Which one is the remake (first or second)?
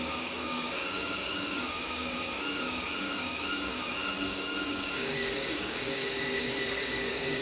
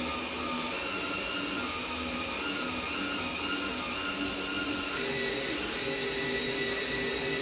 first